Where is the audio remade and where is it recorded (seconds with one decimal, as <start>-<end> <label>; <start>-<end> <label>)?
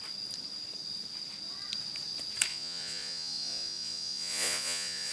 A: 0.0-2.5 recorded; 2.5-5.1 remade